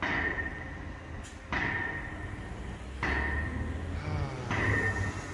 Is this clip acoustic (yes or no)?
yes